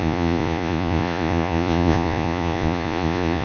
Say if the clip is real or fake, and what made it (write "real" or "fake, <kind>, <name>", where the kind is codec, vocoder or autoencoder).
fake, vocoder, Vocos